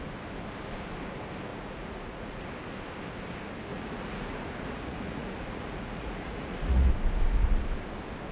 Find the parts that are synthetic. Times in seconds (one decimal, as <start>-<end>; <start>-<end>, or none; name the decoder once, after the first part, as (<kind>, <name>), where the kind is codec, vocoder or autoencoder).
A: 1.5-2.4 (vocoder, Vocos); 3.7-6.9